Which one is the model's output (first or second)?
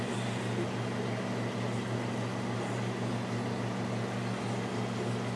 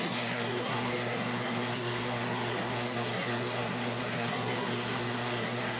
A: second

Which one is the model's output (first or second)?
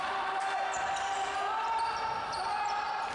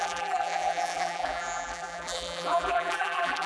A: second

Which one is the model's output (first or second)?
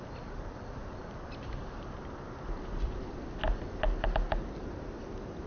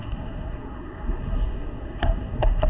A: second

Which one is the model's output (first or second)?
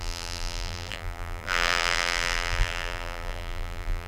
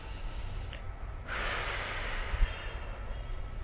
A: first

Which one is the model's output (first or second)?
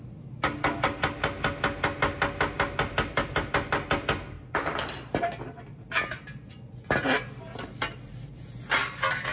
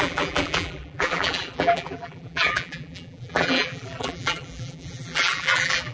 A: second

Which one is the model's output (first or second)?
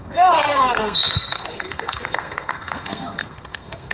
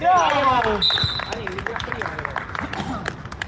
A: first